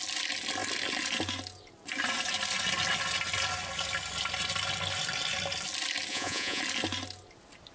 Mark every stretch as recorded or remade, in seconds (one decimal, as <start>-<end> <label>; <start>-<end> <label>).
0.0-6.1 recorded; 6.1-6.6 remade; 6.6-7.7 recorded